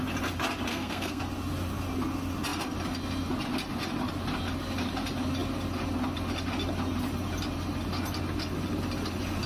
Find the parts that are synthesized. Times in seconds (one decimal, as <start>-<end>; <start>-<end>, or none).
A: 0.7-1.2